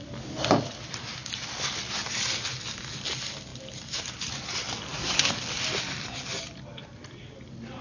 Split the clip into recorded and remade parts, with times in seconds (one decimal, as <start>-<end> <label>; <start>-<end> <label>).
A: 0.0-3.5 recorded; 3.5-4.3 remade; 4.3-7.8 recorded